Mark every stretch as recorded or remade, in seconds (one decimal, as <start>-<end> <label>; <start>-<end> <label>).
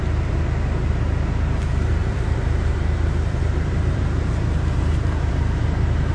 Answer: 0.0-2.0 recorded; 2.0-5.3 remade; 5.3-6.1 recorded